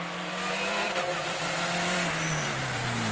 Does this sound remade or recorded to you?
remade